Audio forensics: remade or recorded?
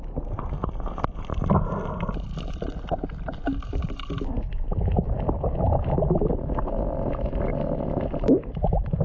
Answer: recorded